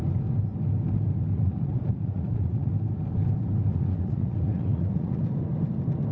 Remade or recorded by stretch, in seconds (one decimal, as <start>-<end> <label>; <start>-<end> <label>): 0.0-1.3 recorded; 1.3-2.7 remade; 2.7-3.7 recorded; 3.7-5.2 remade; 5.2-6.1 recorded